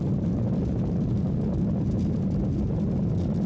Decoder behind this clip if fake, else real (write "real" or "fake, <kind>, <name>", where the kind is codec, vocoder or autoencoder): real